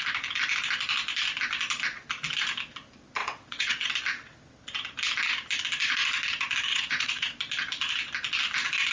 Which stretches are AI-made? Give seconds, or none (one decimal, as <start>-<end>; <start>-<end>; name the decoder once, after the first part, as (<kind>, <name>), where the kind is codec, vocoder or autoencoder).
3.2-3.9 (vocoder, WaveNeXt); 6.7-7.3